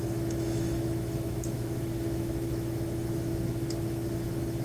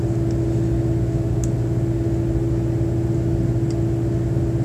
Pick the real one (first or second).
second